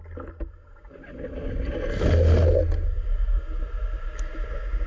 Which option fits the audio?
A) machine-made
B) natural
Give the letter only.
B